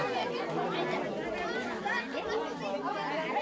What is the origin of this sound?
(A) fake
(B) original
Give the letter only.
B